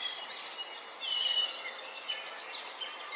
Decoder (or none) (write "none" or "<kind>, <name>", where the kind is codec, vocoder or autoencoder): none